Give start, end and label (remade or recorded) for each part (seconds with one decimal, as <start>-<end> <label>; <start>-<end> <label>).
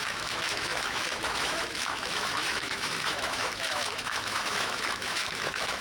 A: 0.0-5.8 remade